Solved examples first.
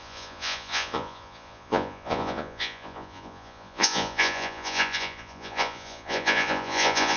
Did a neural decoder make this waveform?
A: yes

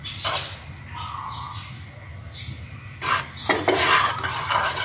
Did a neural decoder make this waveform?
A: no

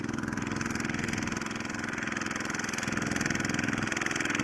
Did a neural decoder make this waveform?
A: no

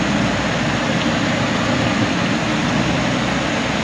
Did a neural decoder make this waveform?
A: no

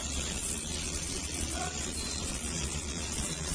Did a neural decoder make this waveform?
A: yes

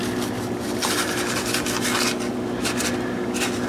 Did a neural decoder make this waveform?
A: no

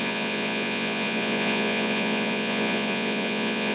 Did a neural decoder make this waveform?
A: yes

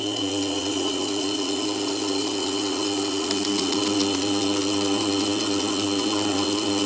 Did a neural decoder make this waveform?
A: yes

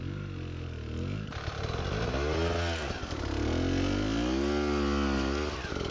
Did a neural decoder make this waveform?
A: no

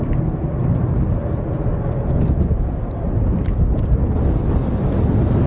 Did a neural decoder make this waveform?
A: no